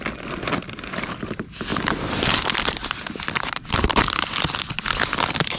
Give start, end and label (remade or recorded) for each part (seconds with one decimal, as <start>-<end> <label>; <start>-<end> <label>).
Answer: 0.0-5.6 recorded